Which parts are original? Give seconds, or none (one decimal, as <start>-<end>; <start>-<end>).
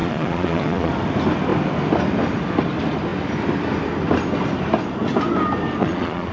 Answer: 0.9-5.8